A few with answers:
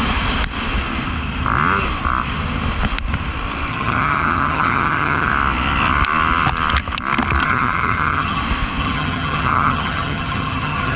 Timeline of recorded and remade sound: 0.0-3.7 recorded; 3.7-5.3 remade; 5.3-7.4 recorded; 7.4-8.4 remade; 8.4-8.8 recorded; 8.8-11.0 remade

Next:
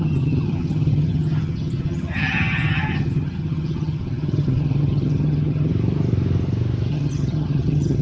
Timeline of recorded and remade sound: 0.0-5.7 remade; 5.7-6.9 recorded; 6.9-8.0 remade

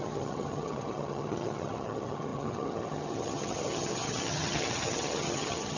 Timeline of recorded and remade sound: 0.0-5.8 remade

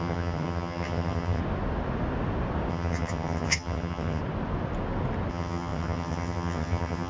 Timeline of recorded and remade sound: 0.0-1.4 remade; 1.4-2.7 recorded; 2.7-4.2 remade; 4.2-5.3 recorded; 5.3-7.1 remade

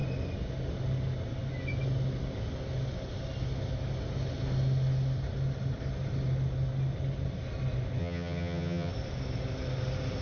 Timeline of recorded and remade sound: 0.0-8.0 recorded; 8.0-8.9 remade; 8.9-10.2 recorded

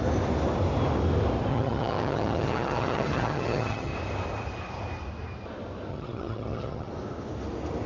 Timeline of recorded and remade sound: 0.0-1.5 recorded; 1.5-3.9 remade; 3.9-5.9 recorded; 5.9-6.9 remade; 6.9-7.9 recorded

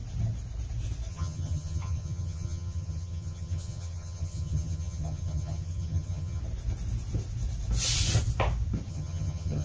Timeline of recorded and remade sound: 0.0-1.1 recorded; 1.1-6.4 remade; 6.4-8.9 recorded; 8.9-9.6 remade